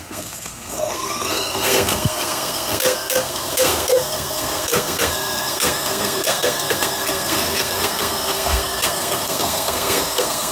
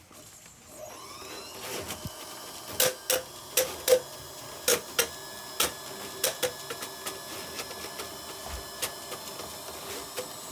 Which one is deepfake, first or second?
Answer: first